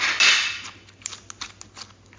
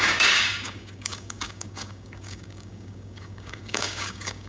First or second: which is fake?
second